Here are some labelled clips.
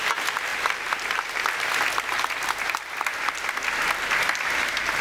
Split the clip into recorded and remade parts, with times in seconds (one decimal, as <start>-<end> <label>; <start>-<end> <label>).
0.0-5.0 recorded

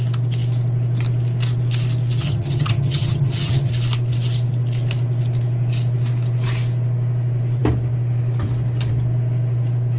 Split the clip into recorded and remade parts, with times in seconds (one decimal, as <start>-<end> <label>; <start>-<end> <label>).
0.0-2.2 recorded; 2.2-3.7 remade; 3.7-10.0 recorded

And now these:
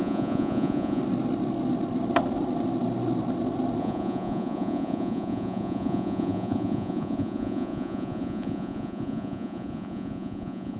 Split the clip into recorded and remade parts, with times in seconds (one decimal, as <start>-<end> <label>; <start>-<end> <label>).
0.0-1.0 remade; 1.0-3.8 recorded; 3.8-10.8 remade

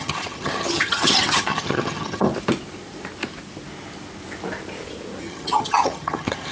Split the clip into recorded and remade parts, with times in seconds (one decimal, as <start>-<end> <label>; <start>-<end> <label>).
0.0-2.3 remade; 2.3-5.2 recorded; 5.2-6.5 remade